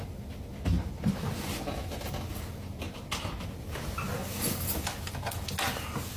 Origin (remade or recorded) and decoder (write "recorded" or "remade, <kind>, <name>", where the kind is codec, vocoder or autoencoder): recorded